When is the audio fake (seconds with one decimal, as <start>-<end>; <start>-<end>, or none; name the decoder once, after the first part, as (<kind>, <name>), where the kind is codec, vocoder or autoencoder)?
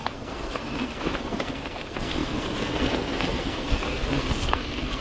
0.0-5.0 (codec, SNAC)